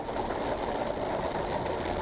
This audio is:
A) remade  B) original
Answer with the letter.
B